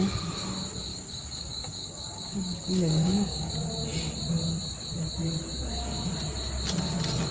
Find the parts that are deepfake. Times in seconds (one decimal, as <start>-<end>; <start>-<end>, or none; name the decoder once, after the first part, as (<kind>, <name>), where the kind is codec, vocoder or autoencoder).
0.9-3.5 (codec, DAC)